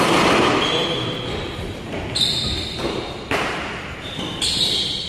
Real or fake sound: real